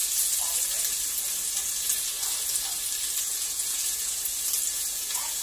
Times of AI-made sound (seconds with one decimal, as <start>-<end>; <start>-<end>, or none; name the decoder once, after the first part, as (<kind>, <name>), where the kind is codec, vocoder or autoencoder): 3.2-4.2 (vocoder, Vocos); 4.7-5.4